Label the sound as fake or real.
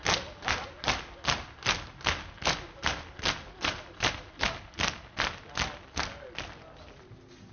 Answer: real